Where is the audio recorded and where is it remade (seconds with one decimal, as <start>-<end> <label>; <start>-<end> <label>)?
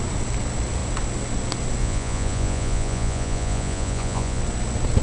0.0-1.8 recorded; 1.8-4.4 remade; 4.4-5.0 recorded